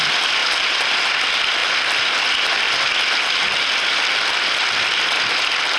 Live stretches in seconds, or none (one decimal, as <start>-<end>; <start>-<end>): 0.0-0.4; 1.0-5.8